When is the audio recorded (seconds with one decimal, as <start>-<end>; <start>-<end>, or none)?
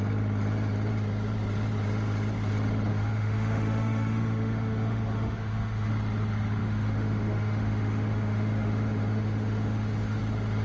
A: 0.0-2.9; 5.9-6.6; 10.2-10.6